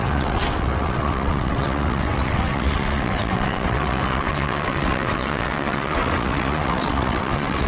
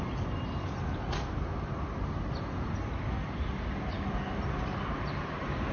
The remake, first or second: first